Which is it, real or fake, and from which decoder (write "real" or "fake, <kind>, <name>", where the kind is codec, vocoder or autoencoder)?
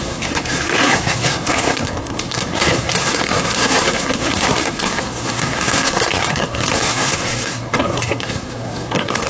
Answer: fake, codec, SNAC